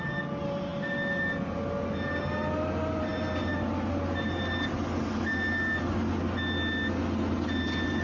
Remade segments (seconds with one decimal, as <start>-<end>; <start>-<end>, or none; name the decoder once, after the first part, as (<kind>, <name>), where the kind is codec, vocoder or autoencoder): none